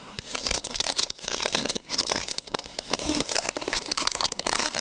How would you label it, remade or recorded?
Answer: remade